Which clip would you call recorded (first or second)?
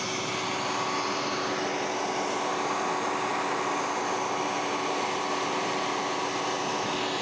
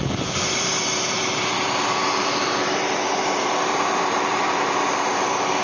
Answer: first